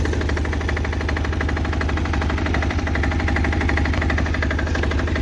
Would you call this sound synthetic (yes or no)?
no